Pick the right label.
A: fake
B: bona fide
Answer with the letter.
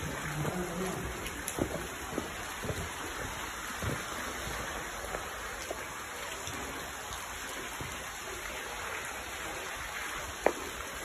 B